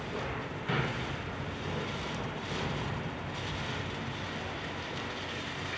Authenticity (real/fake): real